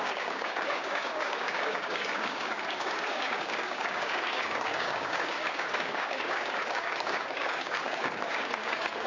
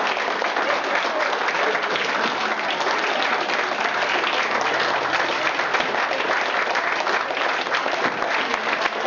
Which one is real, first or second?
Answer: second